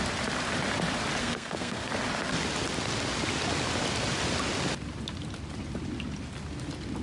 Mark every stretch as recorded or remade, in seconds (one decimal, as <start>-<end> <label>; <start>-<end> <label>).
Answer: 0.0-1.2 recorded; 1.2-1.9 remade; 1.9-7.0 recorded